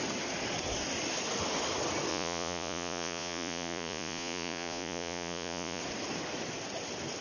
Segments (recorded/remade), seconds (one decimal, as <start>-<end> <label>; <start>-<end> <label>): 0.0-2.1 recorded; 2.1-5.8 remade; 5.8-7.2 recorded